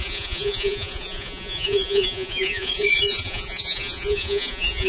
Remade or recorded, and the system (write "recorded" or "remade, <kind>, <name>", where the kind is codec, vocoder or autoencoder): remade, vocoder, Vocos